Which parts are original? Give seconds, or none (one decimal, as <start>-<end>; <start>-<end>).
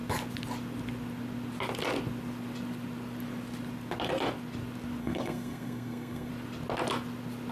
0.0-5.0; 6.3-7.5